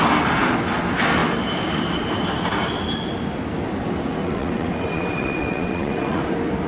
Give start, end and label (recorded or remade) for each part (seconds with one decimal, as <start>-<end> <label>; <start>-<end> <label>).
0.0-4.2 recorded; 4.2-6.2 remade; 6.2-6.7 recorded